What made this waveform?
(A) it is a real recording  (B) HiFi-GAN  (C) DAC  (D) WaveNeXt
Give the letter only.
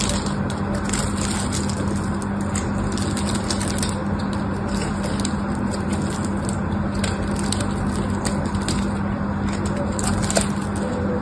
A